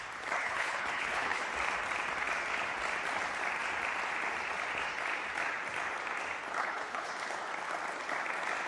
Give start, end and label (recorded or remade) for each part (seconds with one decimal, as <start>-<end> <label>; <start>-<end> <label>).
0.0-0.4 recorded; 0.4-1.4 remade; 1.4-6.6 recorded; 6.6-7.1 remade; 7.1-8.7 recorded